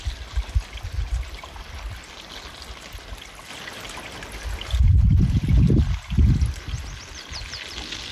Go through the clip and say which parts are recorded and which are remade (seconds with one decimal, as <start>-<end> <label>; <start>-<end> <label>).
0.0-8.1 recorded